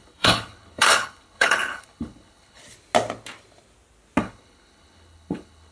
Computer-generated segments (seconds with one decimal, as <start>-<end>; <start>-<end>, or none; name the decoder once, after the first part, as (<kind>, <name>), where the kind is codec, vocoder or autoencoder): 0.0-2.6 (codec, HILCodec); 4.2-5.7